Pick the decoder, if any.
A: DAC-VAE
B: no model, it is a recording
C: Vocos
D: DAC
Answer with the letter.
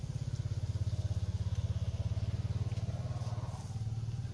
B